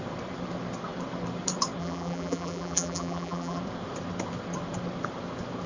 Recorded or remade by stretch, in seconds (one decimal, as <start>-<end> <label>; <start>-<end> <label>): 0.0-1.8 recorded; 1.8-3.6 remade; 3.6-5.7 recorded